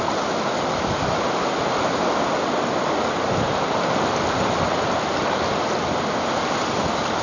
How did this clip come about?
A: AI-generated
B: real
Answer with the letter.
B